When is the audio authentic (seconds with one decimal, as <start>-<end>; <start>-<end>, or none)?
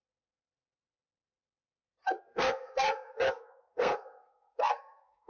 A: 0.0-2.0